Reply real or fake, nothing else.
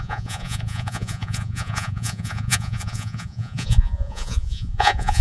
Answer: fake